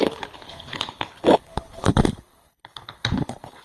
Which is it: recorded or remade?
remade